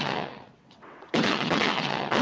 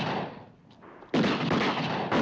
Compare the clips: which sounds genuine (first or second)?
second